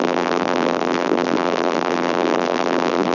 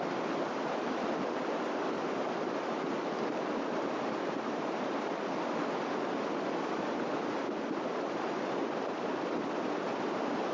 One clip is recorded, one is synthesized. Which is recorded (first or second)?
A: second